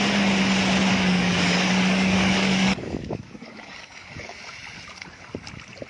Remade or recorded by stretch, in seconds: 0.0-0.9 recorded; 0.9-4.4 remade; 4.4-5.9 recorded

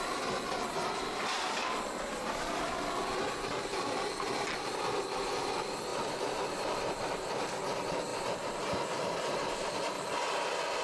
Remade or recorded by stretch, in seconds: 0.0-5.9 recorded; 5.9-7.5 remade; 7.5-8.1 recorded; 8.1-9.7 remade; 9.7-10.8 recorded